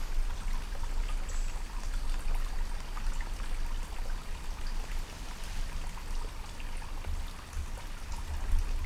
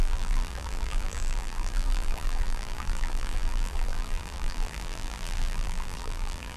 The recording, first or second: first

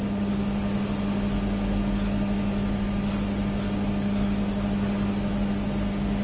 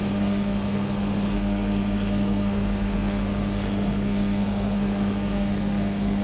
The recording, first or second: first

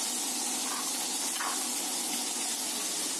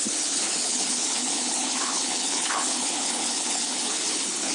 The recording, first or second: first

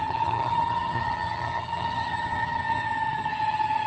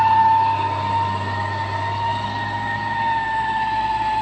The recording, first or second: second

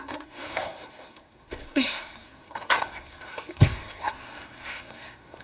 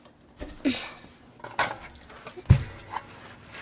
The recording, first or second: second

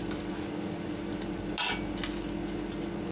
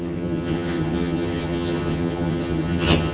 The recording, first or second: first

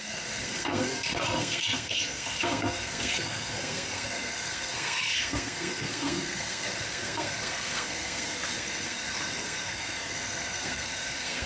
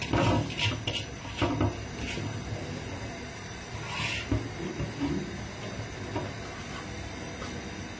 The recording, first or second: second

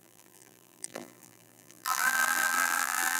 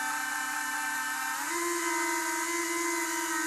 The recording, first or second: second